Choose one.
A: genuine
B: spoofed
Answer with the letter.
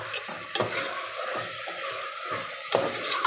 A